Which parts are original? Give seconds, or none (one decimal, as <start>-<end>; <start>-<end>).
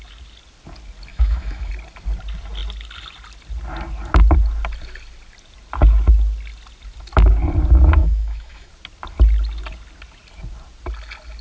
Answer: 0.0-1.1; 1.7-8.0; 8.7-11.4